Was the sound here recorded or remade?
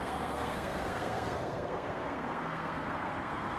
remade